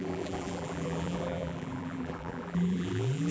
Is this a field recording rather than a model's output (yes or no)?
no